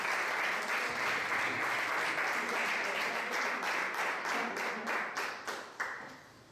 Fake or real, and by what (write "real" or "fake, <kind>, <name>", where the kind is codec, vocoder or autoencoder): real